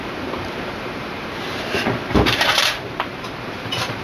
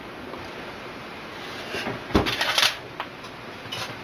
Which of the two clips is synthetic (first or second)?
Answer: first